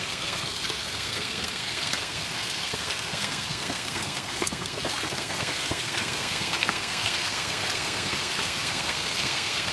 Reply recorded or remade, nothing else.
remade